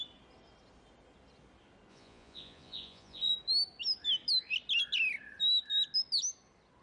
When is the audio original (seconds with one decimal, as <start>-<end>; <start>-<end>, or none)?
0.0-1.9; 3.3-6.8